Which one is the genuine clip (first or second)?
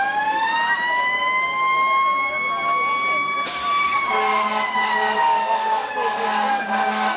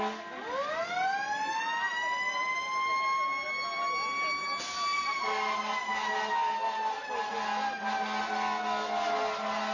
second